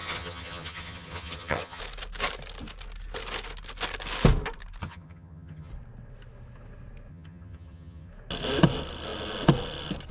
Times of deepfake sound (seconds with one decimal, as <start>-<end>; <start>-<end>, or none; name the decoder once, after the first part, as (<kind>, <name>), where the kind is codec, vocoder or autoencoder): 0.0-1.8 (vocoder, HiFi-GAN); 4.8-5.7; 7.1-8.1